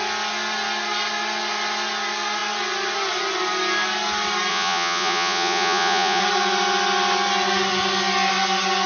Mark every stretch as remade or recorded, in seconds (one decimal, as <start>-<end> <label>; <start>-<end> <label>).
0.0-4.5 recorded; 4.5-6.2 remade; 6.2-8.9 recorded